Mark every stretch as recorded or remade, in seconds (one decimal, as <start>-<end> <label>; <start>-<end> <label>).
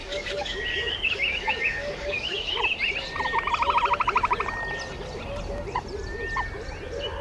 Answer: 0.0-2.6 remade; 2.6-7.2 recorded